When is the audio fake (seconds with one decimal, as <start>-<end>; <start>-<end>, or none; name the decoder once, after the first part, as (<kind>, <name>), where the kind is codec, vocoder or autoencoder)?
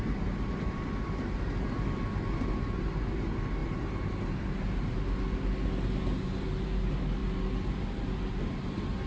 none